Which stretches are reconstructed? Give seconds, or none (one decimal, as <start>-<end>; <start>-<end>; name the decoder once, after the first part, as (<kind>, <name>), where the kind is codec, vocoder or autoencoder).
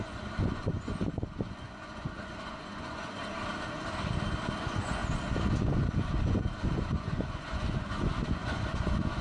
0.0-3.2 (vocoder, Vocos); 4.6-5.0; 5.6-9.2